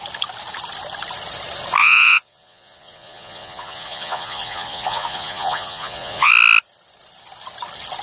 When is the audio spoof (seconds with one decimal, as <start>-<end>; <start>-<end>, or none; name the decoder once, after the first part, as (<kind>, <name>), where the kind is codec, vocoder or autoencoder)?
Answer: 1.8-6.3 (vocoder, Vocos)